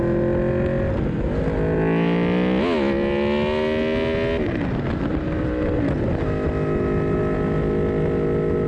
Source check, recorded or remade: recorded